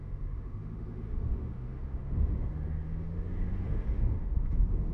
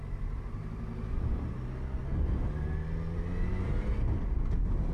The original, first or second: second